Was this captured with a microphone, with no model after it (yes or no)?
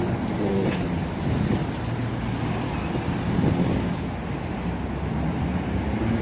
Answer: yes